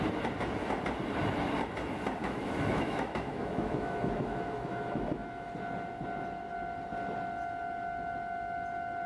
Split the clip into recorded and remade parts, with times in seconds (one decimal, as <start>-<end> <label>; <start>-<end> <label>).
0.0-2.2 recorded; 2.2-5.5 remade; 5.5-9.1 recorded